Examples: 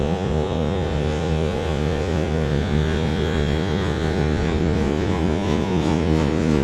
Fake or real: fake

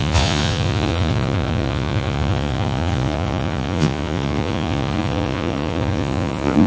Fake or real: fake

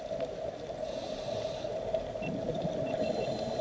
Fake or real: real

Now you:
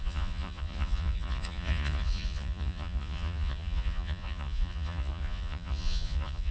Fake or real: fake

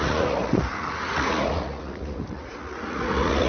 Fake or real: fake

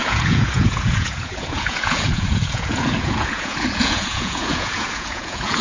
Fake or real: fake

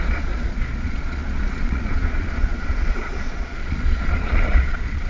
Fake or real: fake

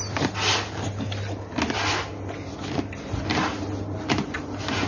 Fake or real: real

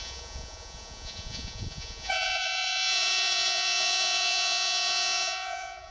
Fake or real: fake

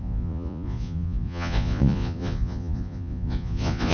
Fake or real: fake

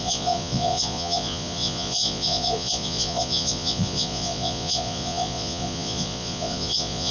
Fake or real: fake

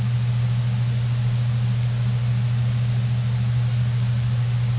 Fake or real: real